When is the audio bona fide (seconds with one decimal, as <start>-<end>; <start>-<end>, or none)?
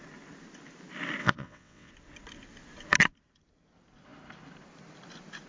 0.0-1.2; 1.9-5.5